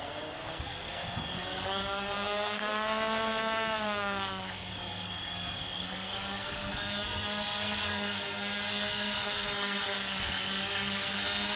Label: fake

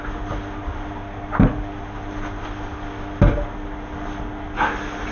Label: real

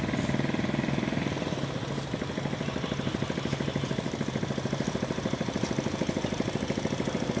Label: real